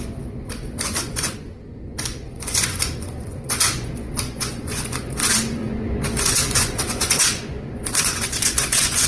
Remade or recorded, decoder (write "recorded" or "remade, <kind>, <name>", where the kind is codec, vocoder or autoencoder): remade, vocoder, Vocos